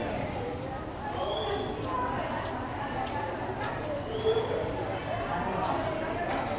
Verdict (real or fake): real